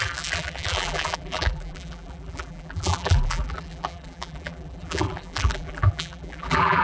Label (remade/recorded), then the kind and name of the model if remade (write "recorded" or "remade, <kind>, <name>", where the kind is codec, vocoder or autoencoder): remade, vocoder, BigVGAN v2